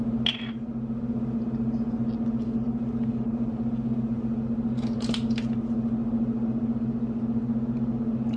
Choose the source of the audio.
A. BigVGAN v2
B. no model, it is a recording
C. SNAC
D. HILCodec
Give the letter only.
B